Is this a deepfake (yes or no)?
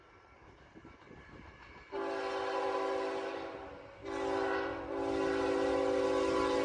no